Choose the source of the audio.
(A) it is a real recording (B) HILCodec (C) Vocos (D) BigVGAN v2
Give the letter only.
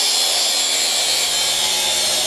A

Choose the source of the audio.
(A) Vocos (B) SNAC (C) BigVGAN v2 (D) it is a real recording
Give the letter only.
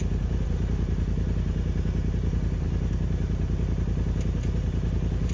D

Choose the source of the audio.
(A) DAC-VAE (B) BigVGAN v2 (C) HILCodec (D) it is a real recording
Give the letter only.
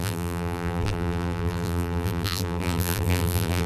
B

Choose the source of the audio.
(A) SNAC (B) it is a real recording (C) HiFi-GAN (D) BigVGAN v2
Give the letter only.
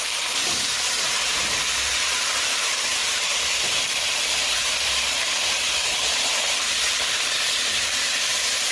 D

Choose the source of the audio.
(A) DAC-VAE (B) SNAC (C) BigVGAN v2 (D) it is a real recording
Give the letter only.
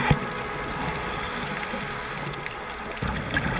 D